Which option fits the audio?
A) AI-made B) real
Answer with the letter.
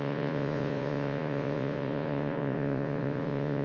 A